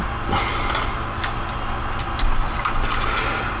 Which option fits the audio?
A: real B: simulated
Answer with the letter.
A